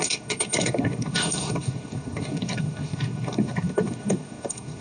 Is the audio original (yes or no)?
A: no